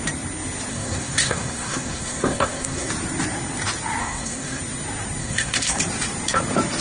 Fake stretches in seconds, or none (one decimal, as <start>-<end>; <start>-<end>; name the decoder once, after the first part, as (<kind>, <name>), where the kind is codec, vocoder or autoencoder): 0.7-2.9 (codec, SNAC); 4.0-4.6; 5.2-5.8